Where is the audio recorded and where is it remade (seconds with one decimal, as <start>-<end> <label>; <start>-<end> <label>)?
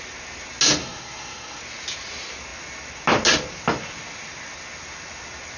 0.0-0.8 recorded; 0.8-1.6 remade; 1.6-5.6 recorded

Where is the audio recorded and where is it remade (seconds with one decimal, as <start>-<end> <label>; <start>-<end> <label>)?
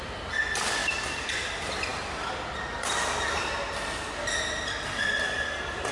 0.0-5.9 recorded